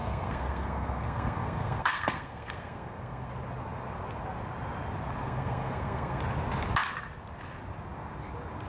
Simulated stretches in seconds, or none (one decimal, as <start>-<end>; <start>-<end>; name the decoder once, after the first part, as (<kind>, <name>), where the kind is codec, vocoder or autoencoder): 0.0-3.3 (codec, SNAC); 5.2-6.2